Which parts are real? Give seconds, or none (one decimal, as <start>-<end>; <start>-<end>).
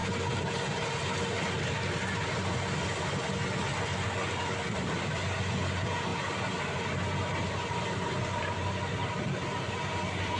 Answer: 0.0-10.4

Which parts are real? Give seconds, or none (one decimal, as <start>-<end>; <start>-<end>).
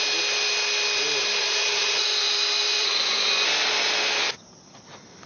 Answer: 0.0-1.4; 2.3-2.7; 3.5-5.3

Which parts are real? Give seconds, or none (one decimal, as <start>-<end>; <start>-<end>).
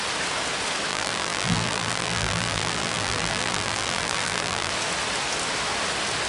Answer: 0.0-0.9; 4.7-6.3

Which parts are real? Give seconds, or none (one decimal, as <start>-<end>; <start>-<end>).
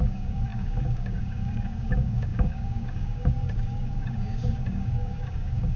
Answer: none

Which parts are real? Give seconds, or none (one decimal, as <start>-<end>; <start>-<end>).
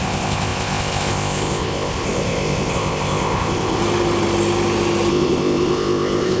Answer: 3.8-5.1